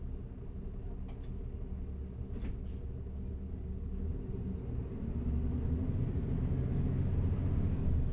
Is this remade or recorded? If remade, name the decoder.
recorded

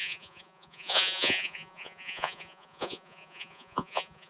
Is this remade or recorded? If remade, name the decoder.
remade, vocoder, Vocos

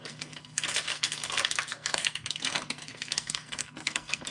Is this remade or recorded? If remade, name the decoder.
remade, codec, SNAC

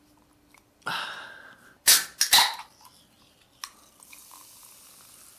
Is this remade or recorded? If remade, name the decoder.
recorded